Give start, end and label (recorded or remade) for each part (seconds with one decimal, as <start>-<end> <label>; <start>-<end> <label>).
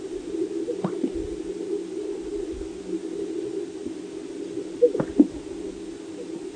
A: 0.0-6.6 recorded